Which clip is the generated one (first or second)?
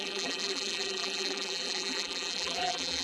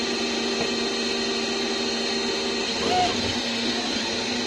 first